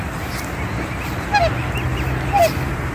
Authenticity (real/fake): real